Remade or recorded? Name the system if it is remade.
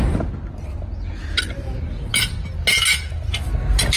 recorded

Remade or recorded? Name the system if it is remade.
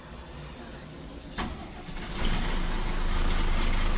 recorded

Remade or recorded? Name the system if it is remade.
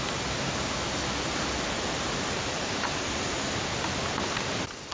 recorded